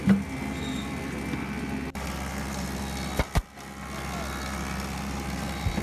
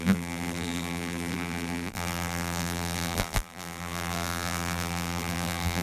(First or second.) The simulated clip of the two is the second